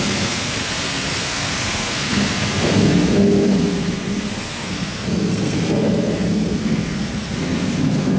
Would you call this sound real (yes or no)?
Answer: no